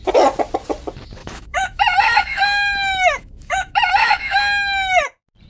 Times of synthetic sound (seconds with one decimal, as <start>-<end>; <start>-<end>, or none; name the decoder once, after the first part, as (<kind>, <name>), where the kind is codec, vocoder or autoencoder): 1.2-4.4 (autoencoder, DAC-VAE)